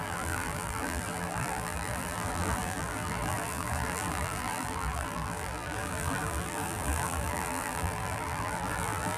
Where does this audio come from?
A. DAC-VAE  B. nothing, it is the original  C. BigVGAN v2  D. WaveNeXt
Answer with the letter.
C